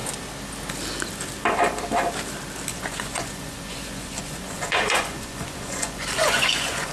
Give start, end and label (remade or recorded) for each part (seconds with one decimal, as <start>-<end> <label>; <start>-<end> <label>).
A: 0.0-2.7 recorded; 2.7-6.9 remade